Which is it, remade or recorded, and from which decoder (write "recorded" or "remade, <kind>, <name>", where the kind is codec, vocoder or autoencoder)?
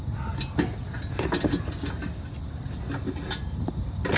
recorded